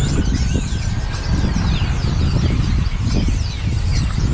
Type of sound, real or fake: real